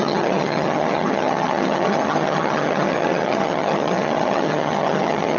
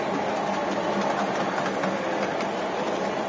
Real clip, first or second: second